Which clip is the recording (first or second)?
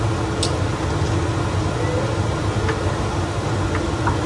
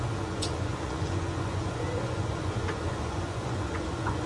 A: first